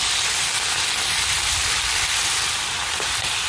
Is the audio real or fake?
real